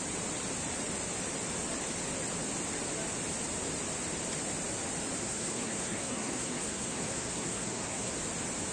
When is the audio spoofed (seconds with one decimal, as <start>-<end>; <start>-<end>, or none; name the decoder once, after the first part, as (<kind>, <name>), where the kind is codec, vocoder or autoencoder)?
5.2-8.1 (codec, SNAC)